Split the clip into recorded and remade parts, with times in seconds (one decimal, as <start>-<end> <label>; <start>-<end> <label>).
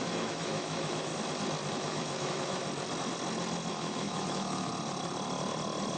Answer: 0.0-1.1 remade; 1.1-1.7 recorded; 1.7-2.6 remade; 2.6-3.7 recorded; 3.7-4.7 remade; 4.7-6.0 recorded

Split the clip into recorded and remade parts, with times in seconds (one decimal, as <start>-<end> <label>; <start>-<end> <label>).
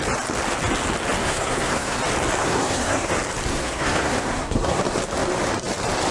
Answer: 0.0-1.2 recorded; 1.2-2.0 remade; 2.0-2.4 recorded; 2.4-3.1 remade; 3.1-3.5 recorded; 3.5-4.8 remade; 4.8-6.1 recorded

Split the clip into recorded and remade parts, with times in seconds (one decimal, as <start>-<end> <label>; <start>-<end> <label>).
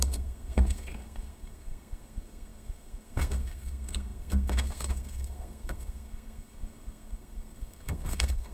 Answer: 0.0-8.5 remade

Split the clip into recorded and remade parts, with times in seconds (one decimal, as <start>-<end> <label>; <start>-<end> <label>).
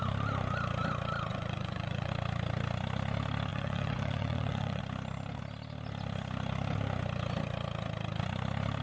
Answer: 0.0-1.3 recorded; 1.3-2.1 remade; 2.1-3.5 recorded; 3.5-4.8 remade; 4.8-8.8 recorded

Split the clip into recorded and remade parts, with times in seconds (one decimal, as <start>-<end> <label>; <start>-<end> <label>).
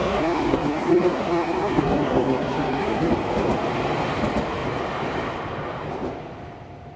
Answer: 0.0-3.1 remade; 3.1-7.0 recorded